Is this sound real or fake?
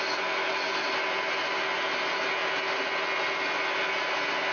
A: real